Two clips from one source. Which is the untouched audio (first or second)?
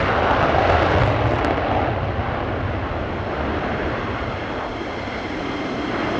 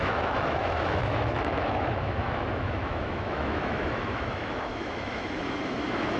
first